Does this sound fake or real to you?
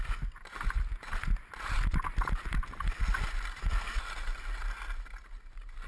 real